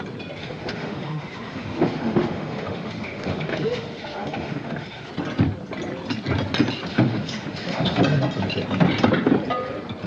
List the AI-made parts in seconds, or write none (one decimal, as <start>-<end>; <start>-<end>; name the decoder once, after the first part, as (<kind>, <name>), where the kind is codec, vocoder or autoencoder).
0.4-5.1 (autoencoder, DAC-VAE); 6.9-8.0

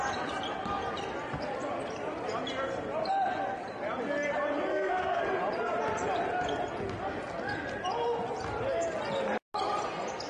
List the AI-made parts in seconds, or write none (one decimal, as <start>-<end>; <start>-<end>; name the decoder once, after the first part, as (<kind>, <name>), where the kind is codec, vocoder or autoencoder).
4.7-5.2 (codec, SNAC)

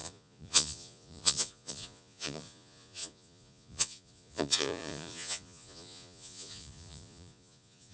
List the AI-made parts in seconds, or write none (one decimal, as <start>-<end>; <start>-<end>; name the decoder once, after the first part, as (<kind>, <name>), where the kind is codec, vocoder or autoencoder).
0.0-7.9 (vocoder, Vocos)

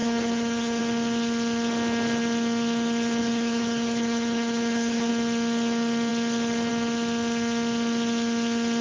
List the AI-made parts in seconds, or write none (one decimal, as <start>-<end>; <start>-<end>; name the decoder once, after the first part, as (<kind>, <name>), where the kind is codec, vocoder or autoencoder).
0.0-0.8 (codec, HILCodec); 3.2-5.1

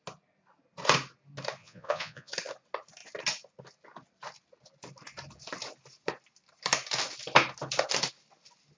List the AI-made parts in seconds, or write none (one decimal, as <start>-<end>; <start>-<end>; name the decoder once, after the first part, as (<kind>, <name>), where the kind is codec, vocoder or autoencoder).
1.6-2.3 (vocoder, Vocos)

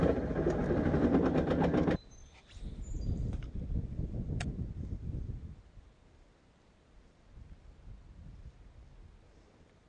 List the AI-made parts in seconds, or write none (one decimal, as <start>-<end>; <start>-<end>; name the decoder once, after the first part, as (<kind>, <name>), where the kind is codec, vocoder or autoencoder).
none